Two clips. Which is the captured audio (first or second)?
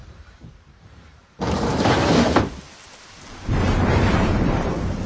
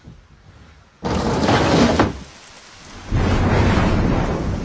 second